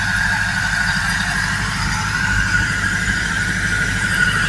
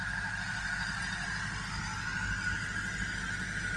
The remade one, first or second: first